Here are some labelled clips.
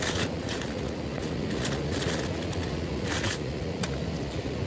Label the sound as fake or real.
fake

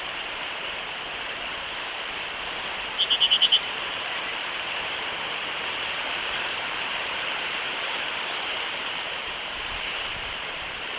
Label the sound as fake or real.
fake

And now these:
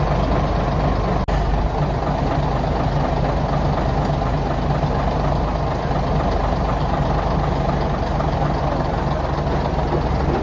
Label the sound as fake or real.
real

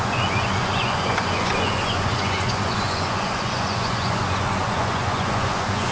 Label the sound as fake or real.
fake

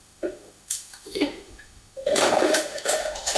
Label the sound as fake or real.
fake